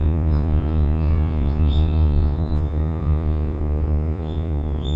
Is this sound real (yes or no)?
no